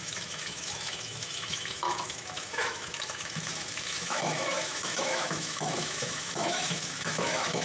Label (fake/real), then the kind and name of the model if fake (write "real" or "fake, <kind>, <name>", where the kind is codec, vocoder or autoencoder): fake, autoencoder, DAC-VAE